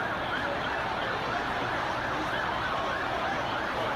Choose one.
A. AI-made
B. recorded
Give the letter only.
B